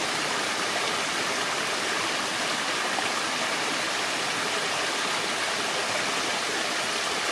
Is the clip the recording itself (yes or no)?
yes